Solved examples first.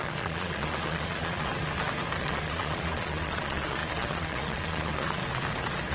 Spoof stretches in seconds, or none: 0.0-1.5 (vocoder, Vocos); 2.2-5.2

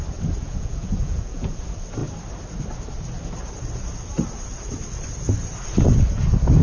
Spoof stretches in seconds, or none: 0.4-1.6 (vocoder, Vocos)

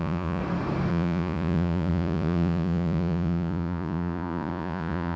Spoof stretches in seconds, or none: 0.0-0.4 (vocoder, Vocos); 0.9-5.2

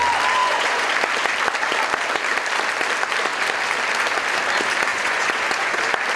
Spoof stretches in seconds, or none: 0.4-0.9 (vocoder, Vocos); 4.9-5.8

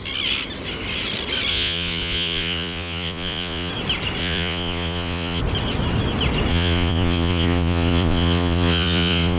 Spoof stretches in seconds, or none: 1.5-3.7 (vocoder, Vocos); 4.2-5.4; 6.5-9.4